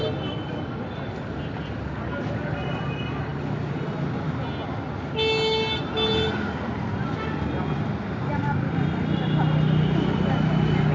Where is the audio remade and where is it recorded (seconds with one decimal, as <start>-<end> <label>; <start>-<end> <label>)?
0.0-10.9 recorded